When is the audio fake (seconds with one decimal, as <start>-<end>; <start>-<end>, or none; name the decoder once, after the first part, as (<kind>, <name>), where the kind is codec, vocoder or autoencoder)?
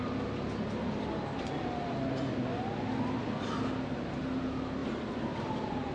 4.8-5.9 (vocoder, BigVGAN v2)